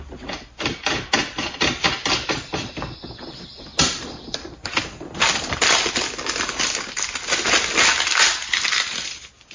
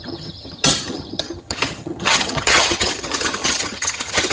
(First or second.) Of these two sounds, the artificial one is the second